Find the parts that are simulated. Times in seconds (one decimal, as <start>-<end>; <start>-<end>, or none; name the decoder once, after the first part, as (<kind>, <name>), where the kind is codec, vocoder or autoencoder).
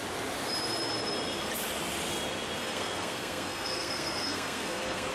2.6-5.1 (codec, SNAC)